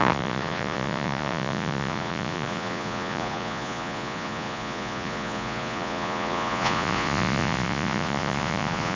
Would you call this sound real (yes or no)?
no